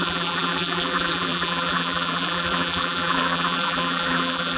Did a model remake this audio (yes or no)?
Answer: yes